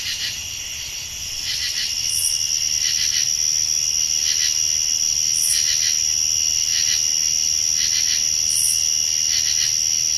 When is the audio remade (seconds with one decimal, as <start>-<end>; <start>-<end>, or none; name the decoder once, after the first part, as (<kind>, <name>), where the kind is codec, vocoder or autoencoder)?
none